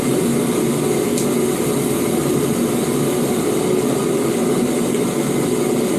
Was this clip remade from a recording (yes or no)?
no